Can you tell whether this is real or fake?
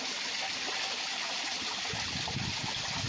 real